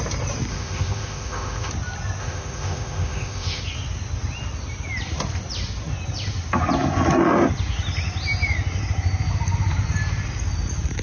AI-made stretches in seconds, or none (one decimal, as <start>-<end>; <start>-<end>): 0.5-1.7; 2.2-3.6